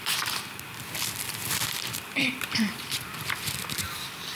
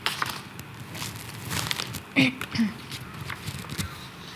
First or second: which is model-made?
first